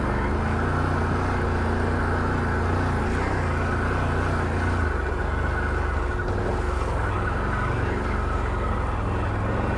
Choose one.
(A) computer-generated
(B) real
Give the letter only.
B